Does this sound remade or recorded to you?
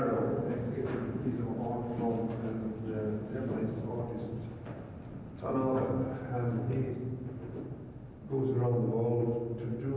recorded